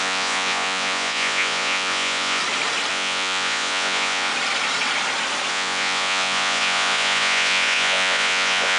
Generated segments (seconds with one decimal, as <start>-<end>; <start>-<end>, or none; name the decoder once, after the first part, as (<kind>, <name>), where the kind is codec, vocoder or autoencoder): 0.0-2.4 (vocoder, Vocos); 2.9-4.3; 5.5-8.8